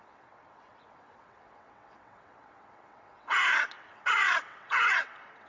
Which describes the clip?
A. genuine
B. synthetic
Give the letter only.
B